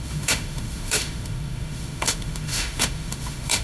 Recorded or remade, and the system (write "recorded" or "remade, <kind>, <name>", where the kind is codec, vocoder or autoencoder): remade, autoencoder, DAC-VAE